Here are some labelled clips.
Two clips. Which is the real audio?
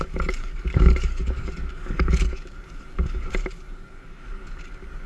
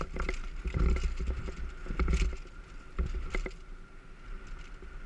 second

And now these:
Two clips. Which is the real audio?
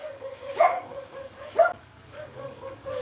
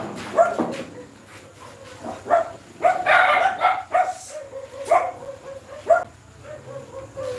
second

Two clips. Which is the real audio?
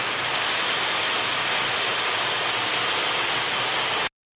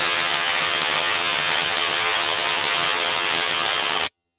first